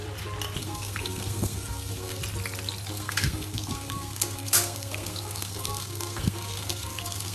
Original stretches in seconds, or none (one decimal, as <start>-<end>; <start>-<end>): 0.0-0.6; 2.2-2.9